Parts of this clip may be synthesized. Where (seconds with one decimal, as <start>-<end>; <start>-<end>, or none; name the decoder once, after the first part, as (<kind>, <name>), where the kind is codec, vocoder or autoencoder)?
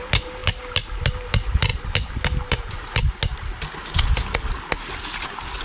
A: none